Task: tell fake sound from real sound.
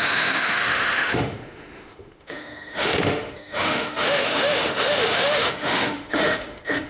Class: fake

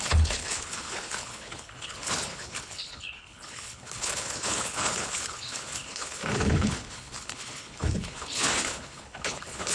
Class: fake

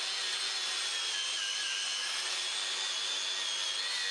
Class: real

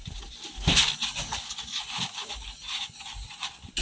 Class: real